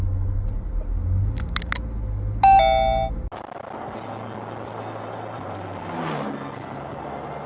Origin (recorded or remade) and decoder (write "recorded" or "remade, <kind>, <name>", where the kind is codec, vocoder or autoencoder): recorded